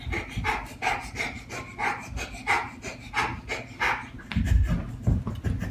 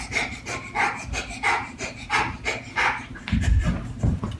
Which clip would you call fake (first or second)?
second